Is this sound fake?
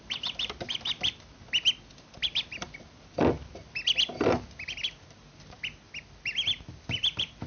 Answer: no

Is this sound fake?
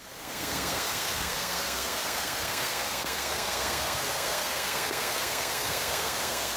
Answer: yes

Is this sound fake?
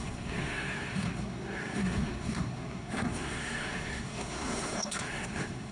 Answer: yes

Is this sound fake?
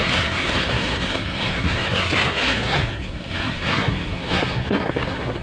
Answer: yes